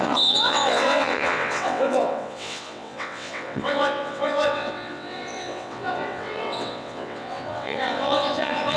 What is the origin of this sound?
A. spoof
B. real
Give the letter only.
A